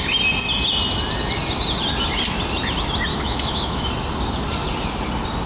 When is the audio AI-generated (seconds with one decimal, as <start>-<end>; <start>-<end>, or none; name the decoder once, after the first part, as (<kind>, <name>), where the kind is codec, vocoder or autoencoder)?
3.1-3.9 (autoencoder, DAC-VAE)